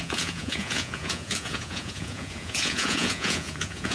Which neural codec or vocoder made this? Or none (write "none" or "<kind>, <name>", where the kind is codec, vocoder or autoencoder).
vocoder, Vocos